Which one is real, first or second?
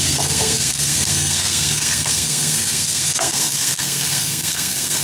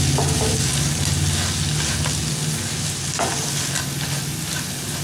second